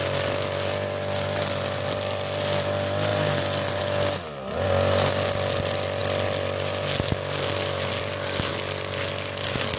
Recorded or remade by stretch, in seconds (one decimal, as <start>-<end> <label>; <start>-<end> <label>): 0.0-9.8 recorded